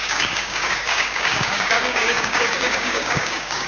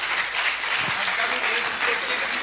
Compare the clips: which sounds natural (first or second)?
second